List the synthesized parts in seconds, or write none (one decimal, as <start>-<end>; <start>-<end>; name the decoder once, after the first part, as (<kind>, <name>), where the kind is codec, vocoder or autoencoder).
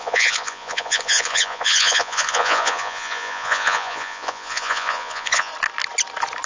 0.0-5.5 (vocoder, Vocos)